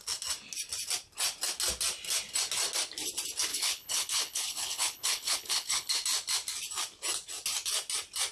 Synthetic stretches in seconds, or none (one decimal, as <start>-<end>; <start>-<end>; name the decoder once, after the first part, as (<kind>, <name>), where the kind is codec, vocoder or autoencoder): 3.5-5.9 (codec, HILCodec)